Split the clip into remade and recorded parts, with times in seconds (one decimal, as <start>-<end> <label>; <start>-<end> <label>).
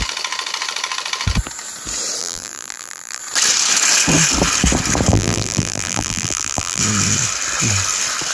0.0-2.2 recorded; 2.2-3.2 remade; 3.2-5.1 recorded; 5.1-6.8 remade; 6.8-8.3 recorded